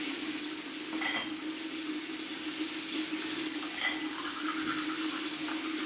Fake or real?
real